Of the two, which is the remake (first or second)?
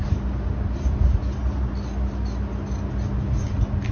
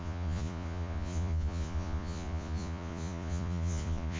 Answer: second